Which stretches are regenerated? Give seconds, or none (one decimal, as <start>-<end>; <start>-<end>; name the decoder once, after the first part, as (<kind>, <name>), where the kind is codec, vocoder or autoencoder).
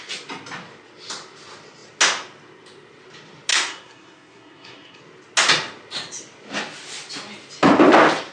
3.5-5.0 (codec, SNAC)